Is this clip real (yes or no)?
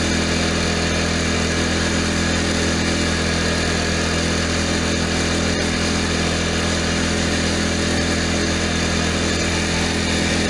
yes